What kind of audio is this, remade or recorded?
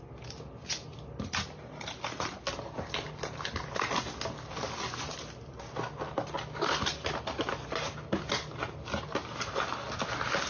recorded